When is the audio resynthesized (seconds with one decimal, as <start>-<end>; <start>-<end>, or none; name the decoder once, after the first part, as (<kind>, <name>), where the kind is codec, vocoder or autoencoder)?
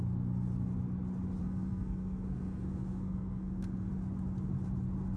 1.4-3.9 (codec, SNAC)